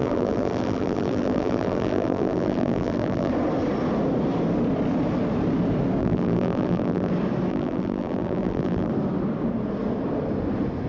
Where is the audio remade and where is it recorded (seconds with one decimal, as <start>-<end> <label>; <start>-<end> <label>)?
0.0-3.3 remade; 3.3-6.0 recorded; 6.0-7.1 remade; 7.1-7.5 recorded; 7.5-8.9 remade; 8.9-10.9 recorded

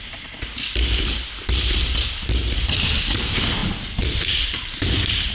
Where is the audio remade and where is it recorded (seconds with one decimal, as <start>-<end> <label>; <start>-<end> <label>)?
0.0-3.6 remade; 3.6-4.1 recorded; 4.1-5.3 remade

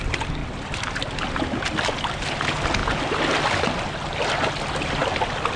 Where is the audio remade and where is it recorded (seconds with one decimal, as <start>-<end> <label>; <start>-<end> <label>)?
0.0-0.4 remade; 0.4-1.3 recorded; 1.3-2.8 remade; 2.8-4.6 recorded; 4.6-5.0 remade; 5.0-5.6 recorded

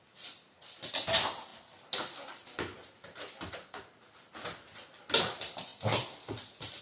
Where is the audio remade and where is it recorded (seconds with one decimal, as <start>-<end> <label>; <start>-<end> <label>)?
0.0-6.8 recorded

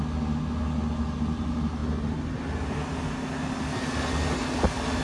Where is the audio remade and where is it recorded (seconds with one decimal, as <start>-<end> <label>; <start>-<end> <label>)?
0.0-5.0 recorded

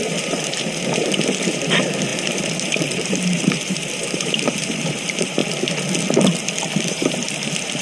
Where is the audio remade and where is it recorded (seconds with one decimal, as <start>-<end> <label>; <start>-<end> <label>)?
0.0-5.4 remade; 5.4-6.9 recorded; 6.9-7.8 remade